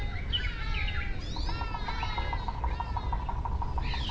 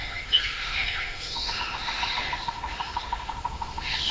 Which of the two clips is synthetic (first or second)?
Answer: second